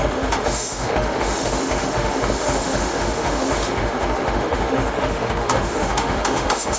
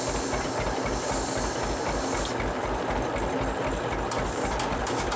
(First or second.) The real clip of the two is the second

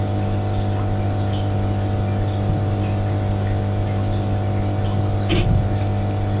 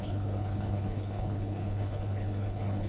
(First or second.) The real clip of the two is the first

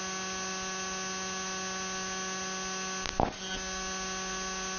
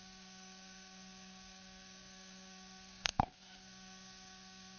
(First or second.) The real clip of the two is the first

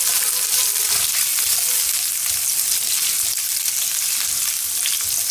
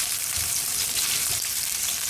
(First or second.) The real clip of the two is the first